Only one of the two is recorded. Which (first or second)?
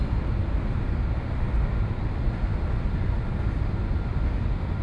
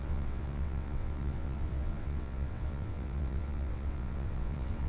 first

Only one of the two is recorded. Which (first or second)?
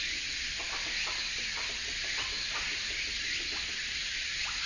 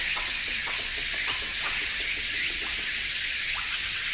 first